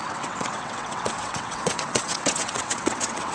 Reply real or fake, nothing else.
fake